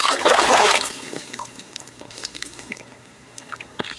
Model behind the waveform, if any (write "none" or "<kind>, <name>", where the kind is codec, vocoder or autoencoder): codec, SNAC